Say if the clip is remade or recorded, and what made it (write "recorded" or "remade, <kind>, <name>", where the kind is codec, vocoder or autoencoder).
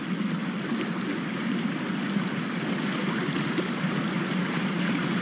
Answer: recorded